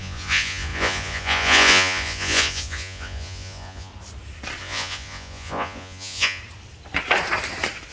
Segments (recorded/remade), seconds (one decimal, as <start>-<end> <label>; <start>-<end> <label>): 0.0-3.9 remade; 3.9-4.6 recorded; 4.6-6.4 remade; 6.4-7.9 recorded